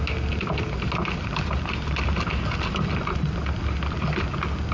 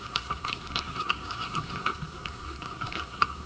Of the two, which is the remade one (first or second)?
second